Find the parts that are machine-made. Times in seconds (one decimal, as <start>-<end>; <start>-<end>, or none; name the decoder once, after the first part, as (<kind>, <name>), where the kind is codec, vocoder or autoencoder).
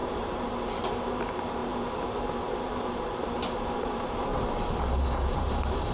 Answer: 0.0-4.3 (vocoder, BigVGAN v2); 5.1-5.9